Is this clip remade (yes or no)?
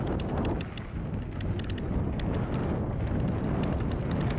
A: no